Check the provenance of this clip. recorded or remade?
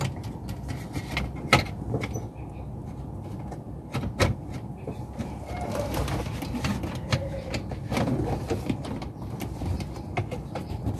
recorded